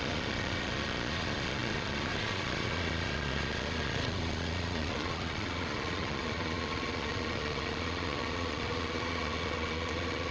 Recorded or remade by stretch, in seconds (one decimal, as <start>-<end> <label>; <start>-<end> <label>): 0.0-10.3 remade

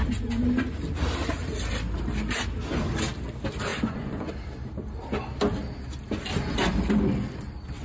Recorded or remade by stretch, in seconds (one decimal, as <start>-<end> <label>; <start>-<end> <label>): 0.0-3.7 recorded; 3.7-4.3 remade; 4.3-7.8 recorded

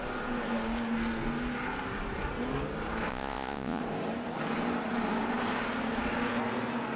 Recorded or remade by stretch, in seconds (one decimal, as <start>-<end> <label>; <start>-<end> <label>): 0.0-3.1 recorded; 3.1-3.8 remade; 3.8-7.0 recorded

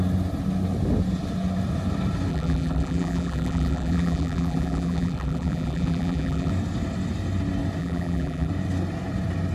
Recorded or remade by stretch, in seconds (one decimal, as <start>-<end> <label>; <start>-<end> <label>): 0.0-2.3 recorded; 2.3-6.5 remade; 6.5-7.8 recorded; 7.8-8.5 remade; 8.5-9.5 recorded

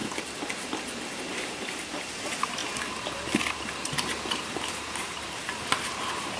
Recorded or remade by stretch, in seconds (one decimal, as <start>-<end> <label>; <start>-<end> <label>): 0.0-1.2 recorded; 1.2-2.6 remade; 2.6-4.7 recorded; 4.7-6.4 remade

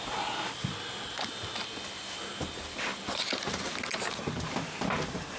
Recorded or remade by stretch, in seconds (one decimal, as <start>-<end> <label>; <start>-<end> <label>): 0.0-5.4 recorded

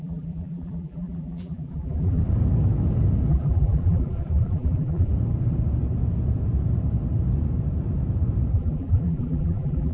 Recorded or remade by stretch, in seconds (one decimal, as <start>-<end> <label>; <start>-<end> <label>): 0.0-2.2 remade; 2.2-3.3 recorded; 3.3-5.1 remade; 5.1-8.5 recorded; 8.5-9.9 remade

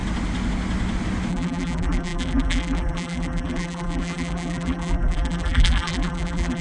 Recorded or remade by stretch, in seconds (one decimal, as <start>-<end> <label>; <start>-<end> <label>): 0.0-1.3 recorded; 1.3-6.6 remade